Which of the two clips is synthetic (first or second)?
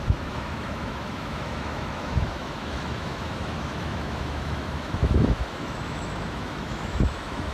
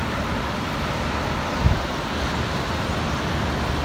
first